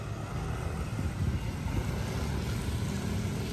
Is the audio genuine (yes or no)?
yes